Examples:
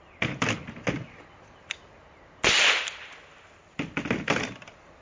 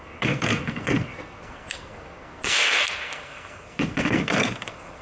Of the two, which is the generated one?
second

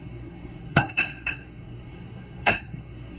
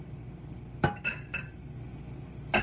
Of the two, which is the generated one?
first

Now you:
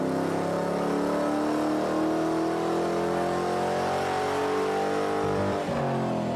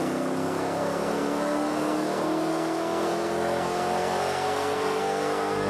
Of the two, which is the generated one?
second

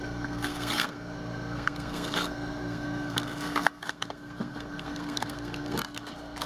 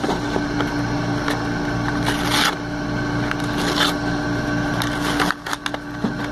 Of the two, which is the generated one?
first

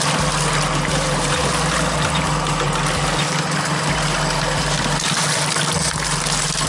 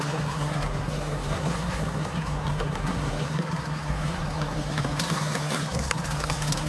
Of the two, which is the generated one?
second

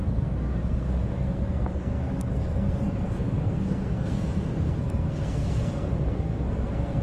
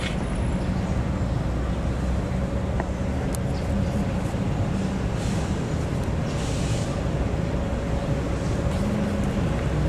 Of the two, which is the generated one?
first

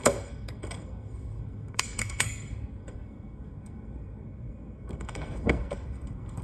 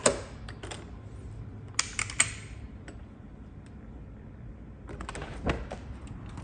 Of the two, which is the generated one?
first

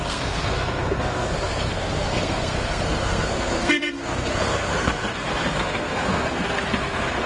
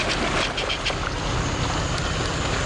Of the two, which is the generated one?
first